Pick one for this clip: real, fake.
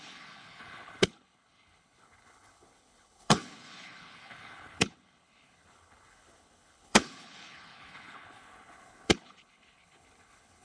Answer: fake